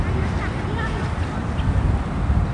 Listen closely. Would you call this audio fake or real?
real